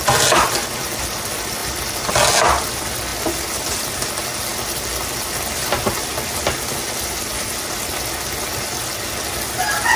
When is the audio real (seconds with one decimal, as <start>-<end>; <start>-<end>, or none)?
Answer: 0.0-10.0